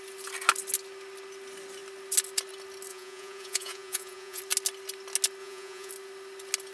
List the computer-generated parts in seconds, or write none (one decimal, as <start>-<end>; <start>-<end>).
2.9-4.4; 5.4-5.9